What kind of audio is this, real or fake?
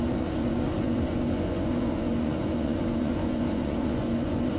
fake